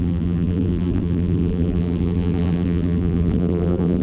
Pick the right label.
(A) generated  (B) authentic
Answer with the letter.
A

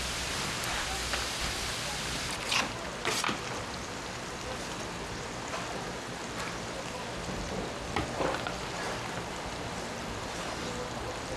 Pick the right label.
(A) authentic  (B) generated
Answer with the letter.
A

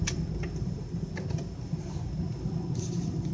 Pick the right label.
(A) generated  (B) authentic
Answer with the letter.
B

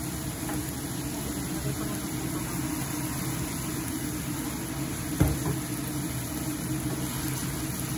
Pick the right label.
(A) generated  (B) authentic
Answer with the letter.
B